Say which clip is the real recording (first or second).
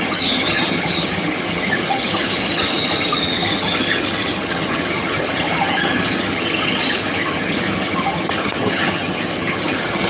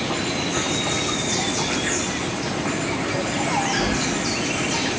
second